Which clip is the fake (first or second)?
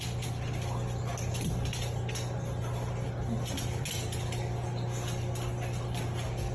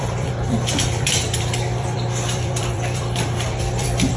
second